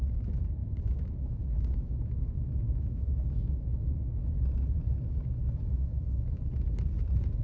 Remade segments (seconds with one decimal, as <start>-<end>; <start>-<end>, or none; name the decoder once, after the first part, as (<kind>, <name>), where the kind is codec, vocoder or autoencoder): 0.6-4.3 (autoencoder, DAC-VAE); 5.7-6.4